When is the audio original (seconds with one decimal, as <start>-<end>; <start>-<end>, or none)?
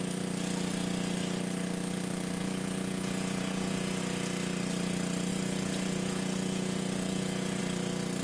0.0-2.4; 4.0-5.3; 7.6-8.2